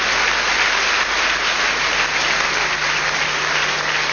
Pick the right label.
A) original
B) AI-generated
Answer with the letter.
A